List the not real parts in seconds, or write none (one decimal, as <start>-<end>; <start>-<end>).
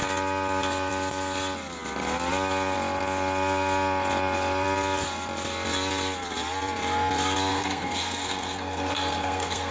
7.5-9.7